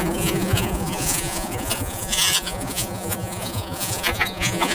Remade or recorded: remade